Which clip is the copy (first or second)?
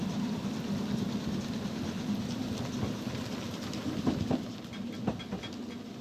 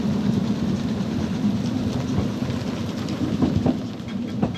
second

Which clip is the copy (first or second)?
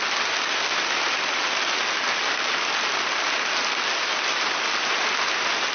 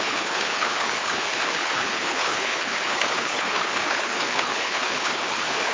second